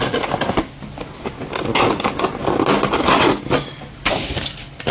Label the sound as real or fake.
real